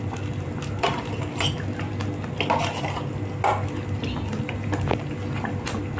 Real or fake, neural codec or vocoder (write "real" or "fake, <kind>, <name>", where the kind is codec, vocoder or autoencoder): real